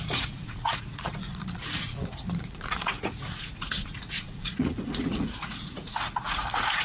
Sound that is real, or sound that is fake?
fake